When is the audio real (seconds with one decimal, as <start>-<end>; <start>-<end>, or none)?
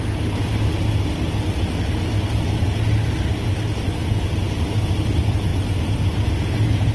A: 0.0-6.9